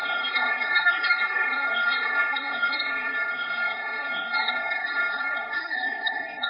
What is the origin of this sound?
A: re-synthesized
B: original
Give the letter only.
A